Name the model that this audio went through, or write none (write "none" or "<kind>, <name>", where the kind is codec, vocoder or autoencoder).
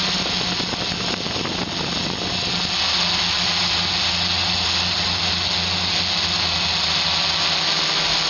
none